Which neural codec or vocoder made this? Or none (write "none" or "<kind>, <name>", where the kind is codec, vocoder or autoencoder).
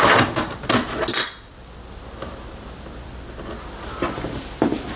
none